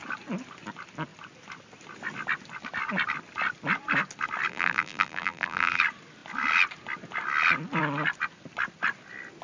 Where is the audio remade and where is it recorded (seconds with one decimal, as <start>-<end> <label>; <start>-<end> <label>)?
0.0-4.5 recorded; 4.5-5.8 remade; 5.8-9.4 recorded